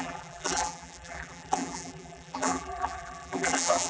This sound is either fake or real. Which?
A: fake